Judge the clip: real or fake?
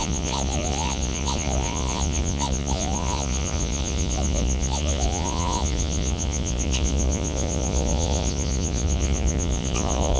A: fake